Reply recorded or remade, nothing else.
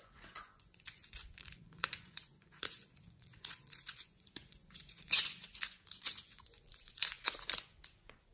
remade